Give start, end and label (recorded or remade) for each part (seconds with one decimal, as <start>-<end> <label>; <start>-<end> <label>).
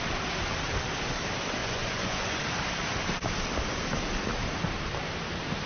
0.0-1.6 recorded; 1.6-2.4 remade; 2.4-5.7 recorded